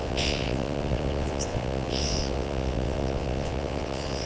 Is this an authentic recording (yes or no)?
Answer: no